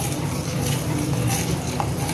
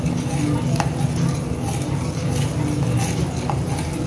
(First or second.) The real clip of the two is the second